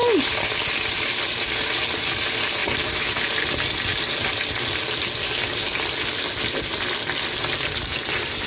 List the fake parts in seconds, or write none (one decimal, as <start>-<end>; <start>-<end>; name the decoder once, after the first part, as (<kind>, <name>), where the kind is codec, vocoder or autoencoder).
none